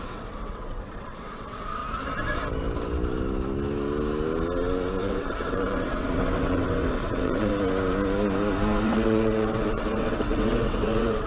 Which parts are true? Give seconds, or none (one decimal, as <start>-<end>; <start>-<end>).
1.8-5.0; 7.5-8.8